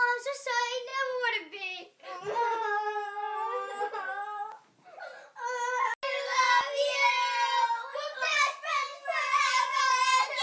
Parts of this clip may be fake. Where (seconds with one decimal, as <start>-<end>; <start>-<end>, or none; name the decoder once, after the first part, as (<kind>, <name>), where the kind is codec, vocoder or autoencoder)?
7.9-9.8 (vocoder, Vocos)